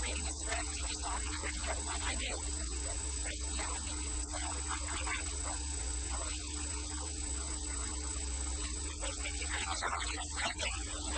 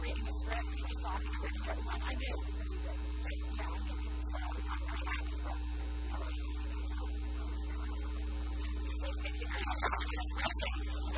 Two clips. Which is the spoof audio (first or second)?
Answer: first